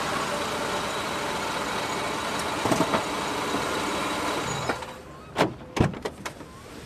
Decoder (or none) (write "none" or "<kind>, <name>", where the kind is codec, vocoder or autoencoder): none